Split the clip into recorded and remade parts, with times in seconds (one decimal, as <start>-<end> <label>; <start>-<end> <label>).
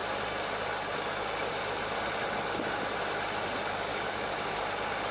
0.0-3.9 recorded; 3.9-4.6 remade; 4.6-5.1 recorded